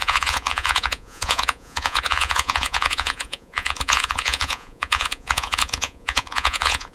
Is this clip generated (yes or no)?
yes